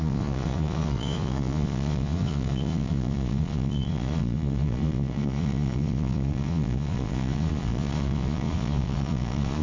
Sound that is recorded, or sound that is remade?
remade